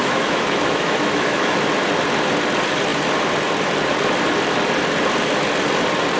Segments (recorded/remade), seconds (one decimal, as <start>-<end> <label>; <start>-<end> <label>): 0.0-1.6 remade; 1.6-6.2 recorded